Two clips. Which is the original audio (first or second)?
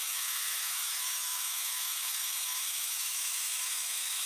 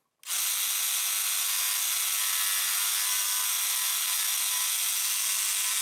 second